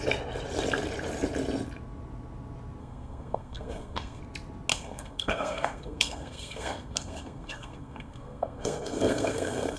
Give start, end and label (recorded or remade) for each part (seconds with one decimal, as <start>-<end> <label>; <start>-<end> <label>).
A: 0.0-2.8 recorded; 2.8-4.2 remade; 4.2-4.7 recorded; 4.7-9.8 remade